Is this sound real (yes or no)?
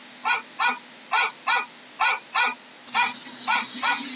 yes